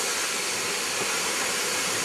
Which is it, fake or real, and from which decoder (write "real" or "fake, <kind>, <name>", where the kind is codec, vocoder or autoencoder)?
real